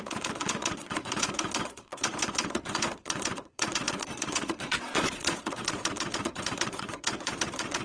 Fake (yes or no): yes